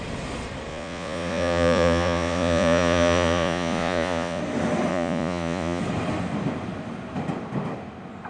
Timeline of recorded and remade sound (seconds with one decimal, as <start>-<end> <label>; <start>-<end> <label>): 0.0-0.7 recorded; 0.7-4.4 remade; 4.4-4.9 recorded; 4.9-5.8 remade; 5.8-8.3 recorded